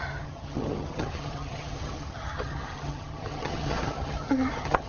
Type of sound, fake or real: fake